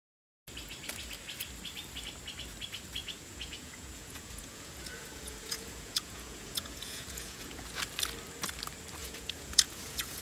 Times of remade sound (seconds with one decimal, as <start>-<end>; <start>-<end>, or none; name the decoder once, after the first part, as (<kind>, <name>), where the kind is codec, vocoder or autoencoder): 3.0-7.8 (vocoder, Vocos); 9.0-10.2